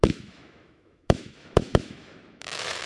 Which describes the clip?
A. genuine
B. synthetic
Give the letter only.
B